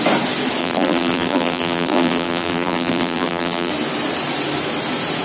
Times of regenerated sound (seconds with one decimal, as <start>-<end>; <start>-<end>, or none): 0.6-3.7